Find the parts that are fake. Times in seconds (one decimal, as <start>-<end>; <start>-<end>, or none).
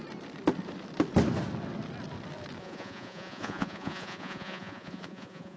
2.6-5.6